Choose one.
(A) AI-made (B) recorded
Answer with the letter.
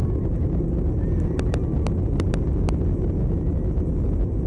B